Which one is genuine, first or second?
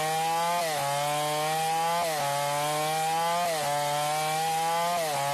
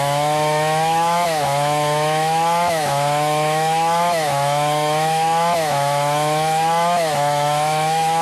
first